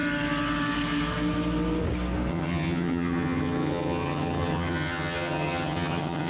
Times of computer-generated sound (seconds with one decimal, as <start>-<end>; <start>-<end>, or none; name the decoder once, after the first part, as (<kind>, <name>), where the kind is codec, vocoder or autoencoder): 2.3-6.3 (vocoder, HiFi-GAN)